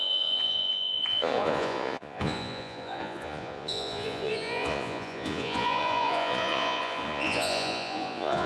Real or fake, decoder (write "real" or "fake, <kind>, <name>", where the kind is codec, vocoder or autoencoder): fake, vocoder, Vocos